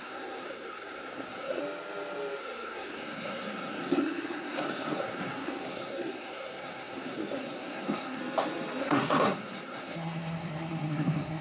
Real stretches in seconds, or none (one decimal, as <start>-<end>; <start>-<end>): 1.6-2.4; 8.2-8.8